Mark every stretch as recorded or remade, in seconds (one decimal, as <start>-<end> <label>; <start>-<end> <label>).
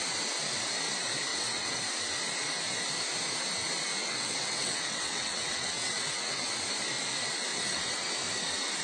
0.0-1.3 recorded; 1.3-1.8 remade; 1.8-4.0 recorded; 4.0-6.5 remade; 6.5-7.5 recorded; 7.5-8.1 remade; 8.1-8.8 recorded